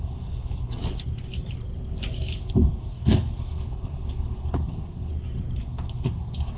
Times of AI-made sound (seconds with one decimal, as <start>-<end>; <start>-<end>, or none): 0.0-0.8; 2.4-5.1; 5.6-6.6